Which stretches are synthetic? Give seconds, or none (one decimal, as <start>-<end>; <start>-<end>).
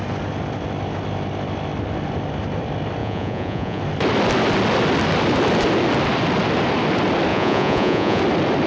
3.0-3.8; 7.3-8.2